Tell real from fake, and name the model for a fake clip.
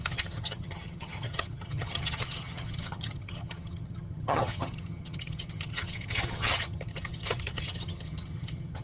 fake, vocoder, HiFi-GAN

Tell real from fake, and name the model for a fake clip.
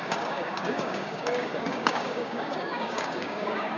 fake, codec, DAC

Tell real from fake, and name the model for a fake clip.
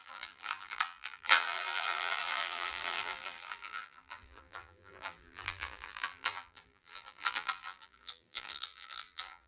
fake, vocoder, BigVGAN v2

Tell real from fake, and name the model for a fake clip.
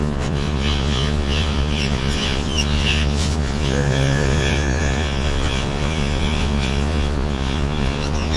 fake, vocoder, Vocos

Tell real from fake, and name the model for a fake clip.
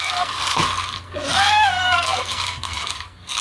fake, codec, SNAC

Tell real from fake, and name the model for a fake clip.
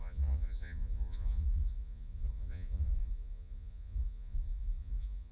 fake, vocoder, Vocos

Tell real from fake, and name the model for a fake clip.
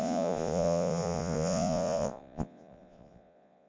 fake, vocoder, Vocos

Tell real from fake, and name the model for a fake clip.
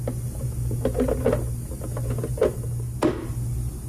real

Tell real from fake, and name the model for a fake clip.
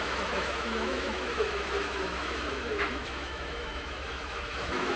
fake, autoencoder, DAC-VAE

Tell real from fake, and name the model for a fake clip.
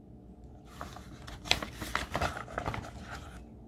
real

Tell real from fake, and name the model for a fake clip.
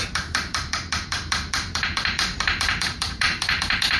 fake, vocoder, BigVGAN v2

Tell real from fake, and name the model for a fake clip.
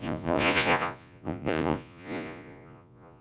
fake, vocoder, Vocos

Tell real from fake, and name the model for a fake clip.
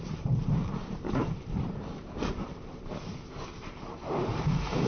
fake, vocoder, BigVGAN v2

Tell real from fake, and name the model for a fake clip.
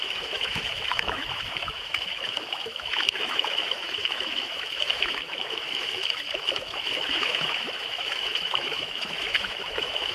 fake, autoencoder, DAC-VAE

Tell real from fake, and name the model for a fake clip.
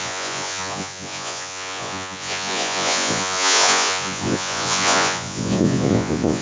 fake, vocoder, Vocos